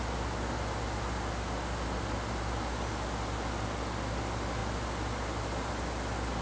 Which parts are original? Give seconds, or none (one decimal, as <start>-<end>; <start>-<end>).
0.0-6.4